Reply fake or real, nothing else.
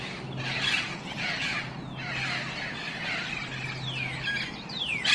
real